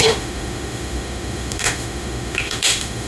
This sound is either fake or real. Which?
fake